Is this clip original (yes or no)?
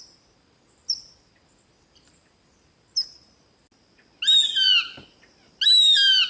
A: yes